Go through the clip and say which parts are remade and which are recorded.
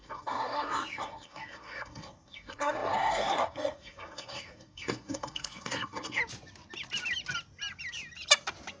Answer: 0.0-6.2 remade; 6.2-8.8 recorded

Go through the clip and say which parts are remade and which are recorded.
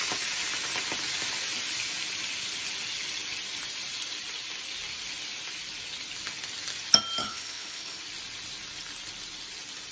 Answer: 0.0-7.2 recorded; 7.2-8.0 remade; 8.0-9.9 recorded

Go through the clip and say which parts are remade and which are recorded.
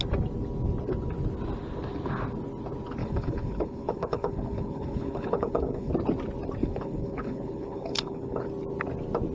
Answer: 0.0-3.0 recorded; 3.0-5.9 remade; 5.9-6.6 recorded; 6.6-8.5 remade; 8.5-9.3 recorded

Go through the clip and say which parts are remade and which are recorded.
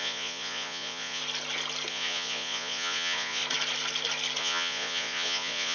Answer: 0.0-1.2 remade; 1.2-1.9 recorded; 1.9-3.4 remade; 3.4-4.4 recorded; 4.4-5.7 remade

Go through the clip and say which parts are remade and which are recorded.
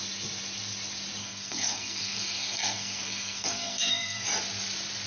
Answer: 0.0-1.2 recorded; 1.2-4.3 remade; 4.3-5.1 recorded